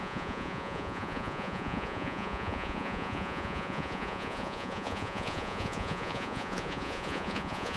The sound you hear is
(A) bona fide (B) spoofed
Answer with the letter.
B